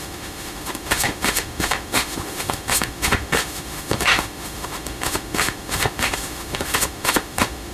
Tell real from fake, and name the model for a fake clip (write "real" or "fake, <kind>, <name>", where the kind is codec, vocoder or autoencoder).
fake, autoencoder, DAC-VAE